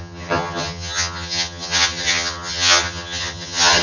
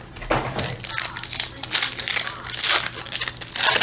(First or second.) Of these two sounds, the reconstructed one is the first